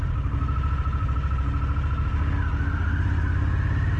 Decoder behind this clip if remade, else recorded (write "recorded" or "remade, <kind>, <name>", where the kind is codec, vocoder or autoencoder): recorded